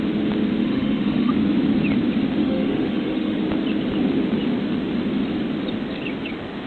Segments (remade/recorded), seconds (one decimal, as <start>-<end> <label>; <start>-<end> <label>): 0.0-0.6 recorded; 0.6-1.3 remade; 1.3-2.4 recorded; 2.4-3.4 remade; 3.4-6.7 recorded